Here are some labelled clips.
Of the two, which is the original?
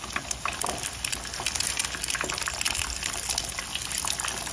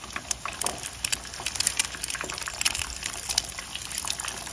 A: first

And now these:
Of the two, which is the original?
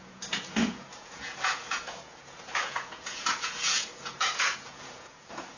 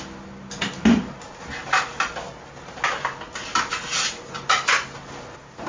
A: second